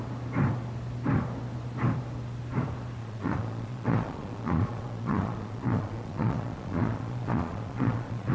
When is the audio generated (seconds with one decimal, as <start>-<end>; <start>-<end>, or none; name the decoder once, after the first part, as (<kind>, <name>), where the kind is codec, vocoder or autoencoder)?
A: 3.0-8.3 (vocoder, Vocos)